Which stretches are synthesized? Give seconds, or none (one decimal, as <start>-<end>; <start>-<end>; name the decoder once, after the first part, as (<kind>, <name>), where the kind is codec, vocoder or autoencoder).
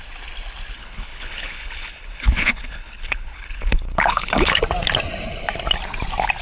0.8-4.6 (codec, HILCodec)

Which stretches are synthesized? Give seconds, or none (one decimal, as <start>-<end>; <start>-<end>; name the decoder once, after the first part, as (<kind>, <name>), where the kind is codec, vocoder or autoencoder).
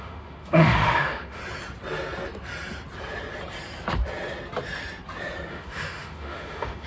0.0-1.4 (autoencoder, DAC-VAE); 5.5-6.9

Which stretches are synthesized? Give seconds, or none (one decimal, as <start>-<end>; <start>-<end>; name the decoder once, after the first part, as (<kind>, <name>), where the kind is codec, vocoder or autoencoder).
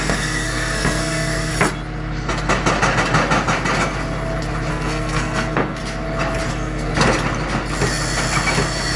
0.0-1.5 (codec, SNAC); 4.7-5.8; 6.5-6.9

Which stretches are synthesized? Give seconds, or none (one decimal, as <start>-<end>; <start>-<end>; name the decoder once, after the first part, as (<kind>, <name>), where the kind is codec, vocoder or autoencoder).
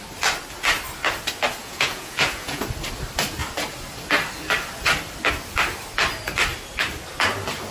1.6-2.6 (vocoder, Vocos)